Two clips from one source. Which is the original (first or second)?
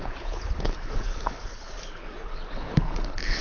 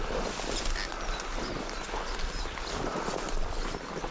second